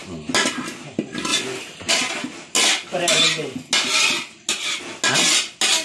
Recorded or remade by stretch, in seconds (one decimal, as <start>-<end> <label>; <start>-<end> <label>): 0.0-5.8 recorded